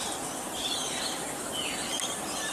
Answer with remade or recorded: recorded